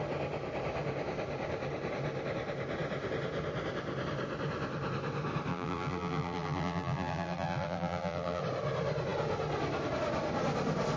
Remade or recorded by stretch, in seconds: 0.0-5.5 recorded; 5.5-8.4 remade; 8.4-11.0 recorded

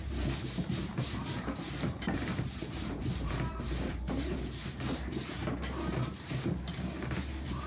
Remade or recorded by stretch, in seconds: 0.0-5.4 remade; 5.4-5.9 recorded; 5.9-7.7 remade